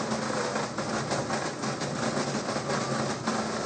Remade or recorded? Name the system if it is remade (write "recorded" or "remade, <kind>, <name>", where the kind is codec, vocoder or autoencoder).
recorded